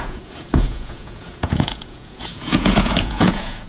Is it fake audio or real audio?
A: fake